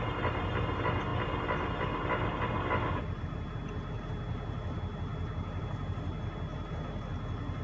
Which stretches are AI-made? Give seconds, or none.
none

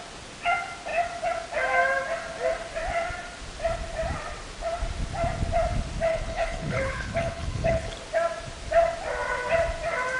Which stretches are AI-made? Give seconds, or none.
6.1-7.9 (codec, HILCodec)

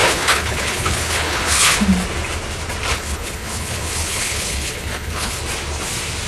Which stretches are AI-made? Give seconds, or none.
0.0-1.8 (codec, HILCodec); 2.9-5.4

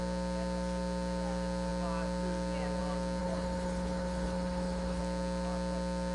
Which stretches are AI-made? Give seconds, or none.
3.2-5.0 (codec, HILCodec)

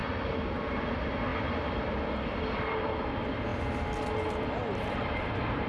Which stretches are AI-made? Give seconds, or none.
none

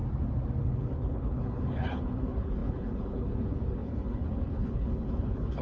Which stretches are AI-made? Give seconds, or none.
0.6-5.6 (codec, HILCodec)

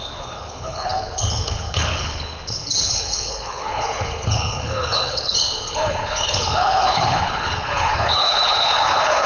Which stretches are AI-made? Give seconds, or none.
0.0-9.3 (codec, HILCodec)